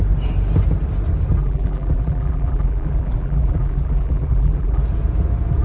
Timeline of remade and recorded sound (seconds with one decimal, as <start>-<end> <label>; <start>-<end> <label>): 0.0-1.4 recorded; 1.4-4.8 remade; 4.8-5.6 recorded